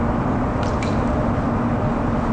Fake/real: real